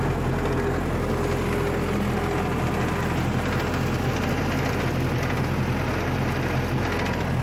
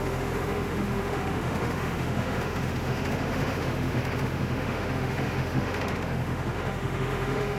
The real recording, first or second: first